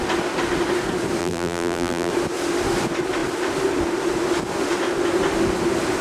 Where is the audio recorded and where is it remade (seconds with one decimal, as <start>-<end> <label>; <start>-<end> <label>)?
0.0-1.2 recorded; 1.2-2.1 remade; 2.1-6.0 recorded